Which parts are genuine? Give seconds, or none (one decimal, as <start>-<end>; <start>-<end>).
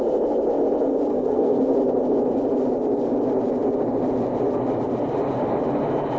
0.0-1.1; 1.6-6.2